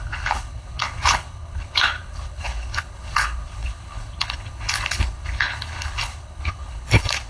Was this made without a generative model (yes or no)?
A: no